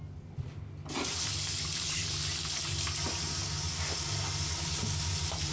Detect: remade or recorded recorded